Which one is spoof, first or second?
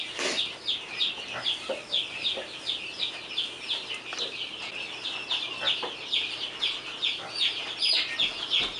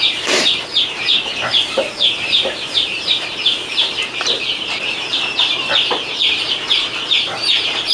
second